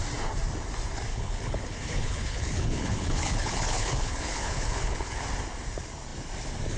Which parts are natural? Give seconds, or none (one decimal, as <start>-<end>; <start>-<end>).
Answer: 0.0-1.1; 5.2-6.8